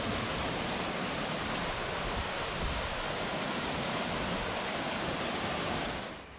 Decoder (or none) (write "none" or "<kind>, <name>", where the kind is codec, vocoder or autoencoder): none